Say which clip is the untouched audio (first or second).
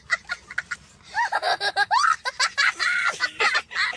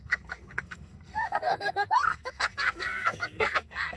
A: first